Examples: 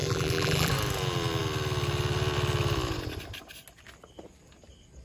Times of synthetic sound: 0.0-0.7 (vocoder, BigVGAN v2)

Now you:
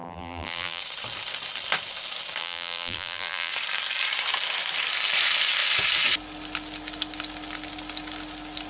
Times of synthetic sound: 0.0-0.8 (vocoder, BigVGAN v2); 2.4-3.5

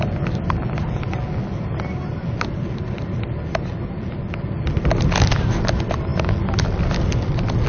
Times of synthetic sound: none

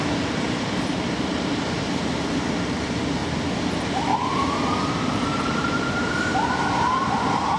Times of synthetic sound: 0.0-3.2 (vocoder, BigVGAN v2); 4.9-7.6

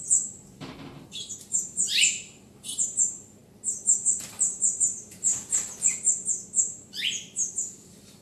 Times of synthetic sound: 0.0-3.4 (vocoder, BigVGAN v2); 4.3-5.3; 6.6-7.0; 7.5-8.2

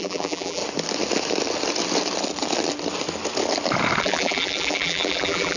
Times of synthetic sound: 0.0-0.6 (vocoder, BigVGAN v2); 4.0-5.6

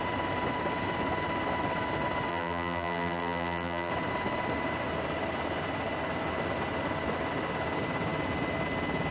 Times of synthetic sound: 2.3-3.9 (vocoder, BigVGAN v2)